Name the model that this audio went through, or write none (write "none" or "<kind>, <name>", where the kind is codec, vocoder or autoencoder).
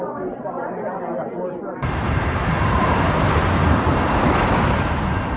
vocoder, BigVGAN v2